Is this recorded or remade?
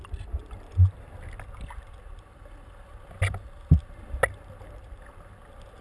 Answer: recorded